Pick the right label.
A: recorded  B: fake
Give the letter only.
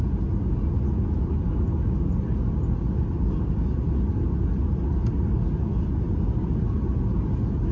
A